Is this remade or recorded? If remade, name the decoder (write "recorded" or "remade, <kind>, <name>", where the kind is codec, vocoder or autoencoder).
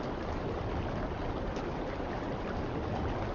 recorded